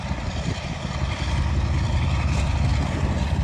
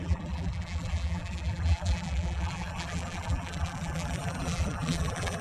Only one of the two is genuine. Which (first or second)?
first